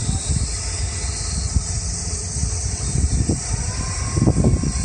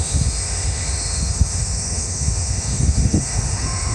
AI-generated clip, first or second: second